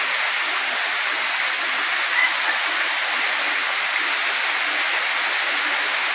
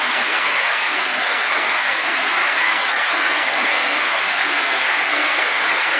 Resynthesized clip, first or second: second